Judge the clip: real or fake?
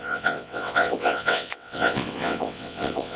fake